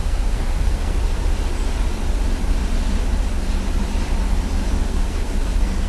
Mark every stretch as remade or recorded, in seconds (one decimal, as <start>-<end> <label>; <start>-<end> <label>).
0.0-1.0 remade; 1.0-4.8 recorded; 4.8-5.9 remade